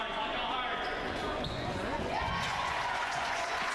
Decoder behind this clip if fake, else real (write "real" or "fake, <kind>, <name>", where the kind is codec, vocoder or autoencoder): fake, vocoder, Vocos